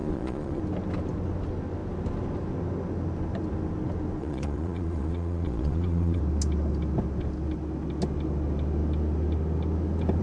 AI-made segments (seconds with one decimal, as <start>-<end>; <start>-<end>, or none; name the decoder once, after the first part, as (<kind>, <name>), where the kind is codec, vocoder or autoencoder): 0.0-0.6 (vocoder, Vocos); 4.2-6.2